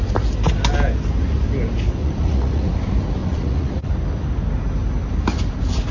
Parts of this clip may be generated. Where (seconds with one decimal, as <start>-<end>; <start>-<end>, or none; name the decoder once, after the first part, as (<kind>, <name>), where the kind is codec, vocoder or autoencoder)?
2.0-2.7 (vocoder, Vocos); 3.2-3.9